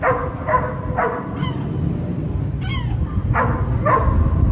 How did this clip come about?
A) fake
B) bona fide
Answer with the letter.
B